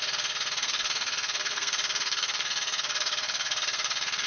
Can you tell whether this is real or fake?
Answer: fake